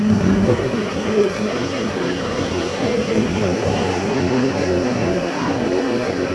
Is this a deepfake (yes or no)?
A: yes